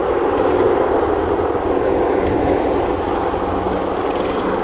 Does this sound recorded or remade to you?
recorded